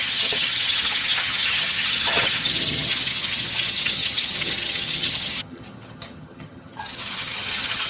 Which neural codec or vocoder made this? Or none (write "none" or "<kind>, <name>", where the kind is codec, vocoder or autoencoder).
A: vocoder, HiFi-GAN